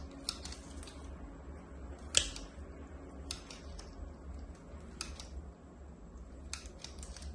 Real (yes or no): yes